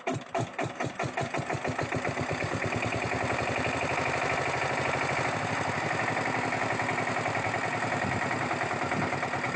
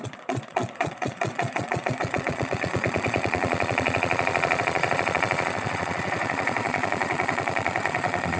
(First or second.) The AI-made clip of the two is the second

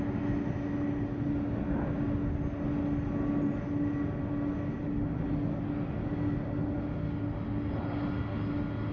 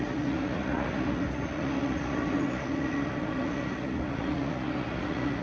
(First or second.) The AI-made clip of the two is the second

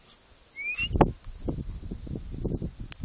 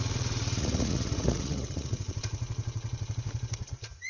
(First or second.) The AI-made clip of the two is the second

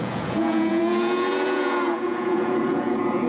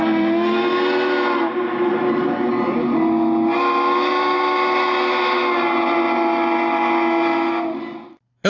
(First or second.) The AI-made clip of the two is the first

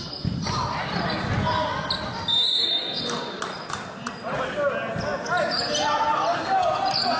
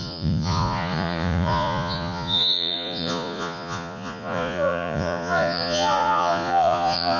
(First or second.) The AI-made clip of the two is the second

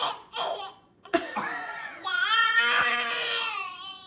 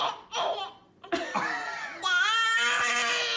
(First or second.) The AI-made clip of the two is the first